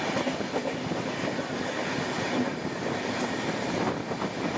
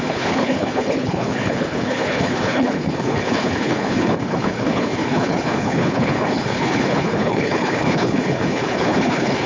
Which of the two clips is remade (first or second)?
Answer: second